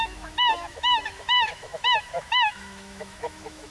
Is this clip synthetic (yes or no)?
yes